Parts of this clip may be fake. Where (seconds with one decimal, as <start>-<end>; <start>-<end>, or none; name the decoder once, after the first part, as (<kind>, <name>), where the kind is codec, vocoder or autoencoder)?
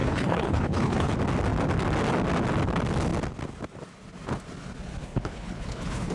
0.0-1.1 (codec, HILCodec); 5.0-6.1